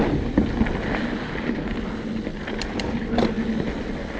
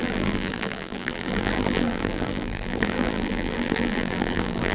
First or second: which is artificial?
second